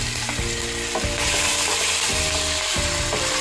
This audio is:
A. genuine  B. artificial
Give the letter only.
A